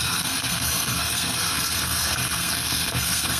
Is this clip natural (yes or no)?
no